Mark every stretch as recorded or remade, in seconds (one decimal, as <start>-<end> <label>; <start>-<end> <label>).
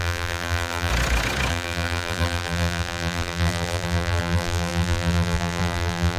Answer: 0.0-0.9 remade; 0.9-1.5 recorded; 1.5-6.2 remade